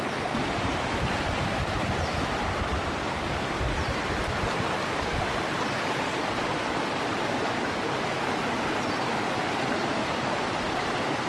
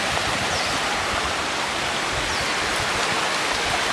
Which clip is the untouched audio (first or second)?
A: second